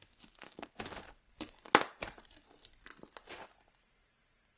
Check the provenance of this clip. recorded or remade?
remade